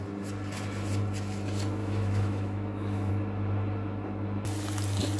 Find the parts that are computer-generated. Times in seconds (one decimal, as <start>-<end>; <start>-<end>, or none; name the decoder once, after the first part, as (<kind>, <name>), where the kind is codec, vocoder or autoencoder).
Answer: 1.8-3.1 (autoencoder, DAC-VAE)